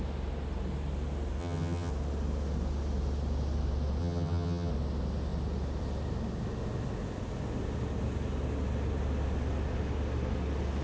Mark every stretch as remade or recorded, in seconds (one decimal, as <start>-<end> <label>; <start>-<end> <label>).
0.0-1.4 recorded; 1.4-1.9 remade; 1.9-4.0 recorded; 4.0-4.7 remade; 4.7-10.8 recorded